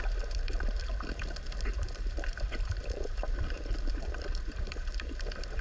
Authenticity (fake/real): fake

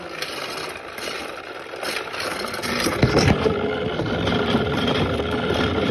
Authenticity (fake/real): real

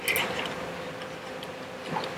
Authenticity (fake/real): real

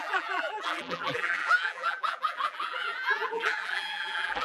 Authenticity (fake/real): fake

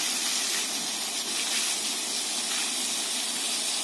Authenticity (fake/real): real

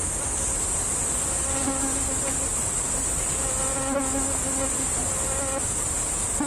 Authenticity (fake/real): real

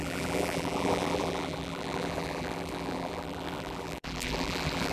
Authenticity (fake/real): fake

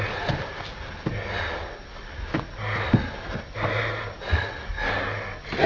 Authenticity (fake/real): real